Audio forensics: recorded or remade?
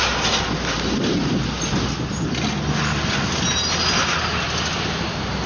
recorded